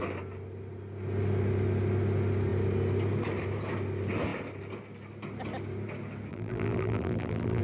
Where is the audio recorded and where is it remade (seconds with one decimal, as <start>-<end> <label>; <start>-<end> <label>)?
0.0-6.3 recorded; 6.3-7.6 remade